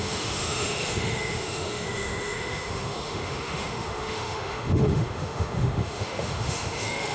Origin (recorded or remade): remade